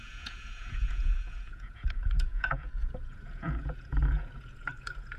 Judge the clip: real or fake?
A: fake